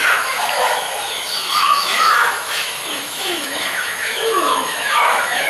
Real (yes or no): no